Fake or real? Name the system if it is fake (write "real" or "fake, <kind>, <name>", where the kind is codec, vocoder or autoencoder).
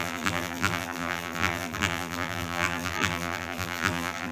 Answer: fake, vocoder, BigVGAN v2